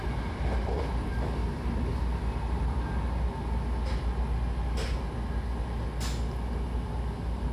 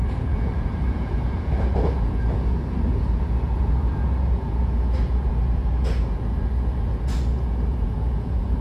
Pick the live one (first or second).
first